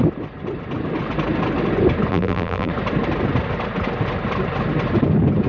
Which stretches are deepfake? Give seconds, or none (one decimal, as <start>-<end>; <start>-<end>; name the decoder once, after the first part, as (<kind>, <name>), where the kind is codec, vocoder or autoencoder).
2.1-2.7 (vocoder, BigVGAN v2)